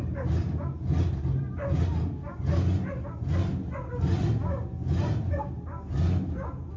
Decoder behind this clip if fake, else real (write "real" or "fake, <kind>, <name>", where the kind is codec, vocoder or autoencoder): real